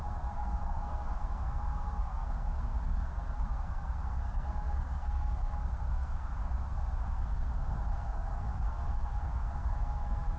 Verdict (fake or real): fake